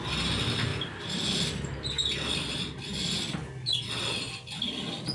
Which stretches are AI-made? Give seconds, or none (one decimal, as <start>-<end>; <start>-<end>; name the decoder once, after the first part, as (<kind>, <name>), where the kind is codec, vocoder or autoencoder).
none